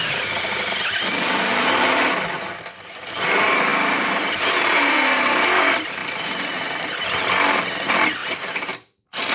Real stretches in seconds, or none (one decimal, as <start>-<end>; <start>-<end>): 0.0-3.7; 4.6-6.0; 7.6-8.2